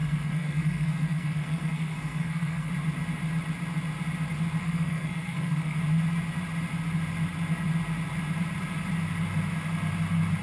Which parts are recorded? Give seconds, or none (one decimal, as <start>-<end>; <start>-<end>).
2.7-4.6; 5.8-10.4